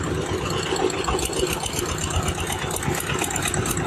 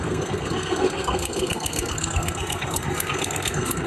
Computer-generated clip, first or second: second